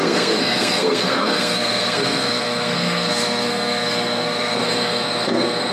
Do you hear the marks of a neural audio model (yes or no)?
yes